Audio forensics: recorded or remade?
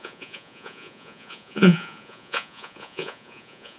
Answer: remade